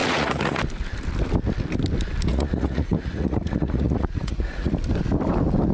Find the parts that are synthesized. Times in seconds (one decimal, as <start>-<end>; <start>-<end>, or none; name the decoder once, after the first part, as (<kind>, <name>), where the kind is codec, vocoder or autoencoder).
0.0-0.6 (vocoder, Vocos); 2.3-4.7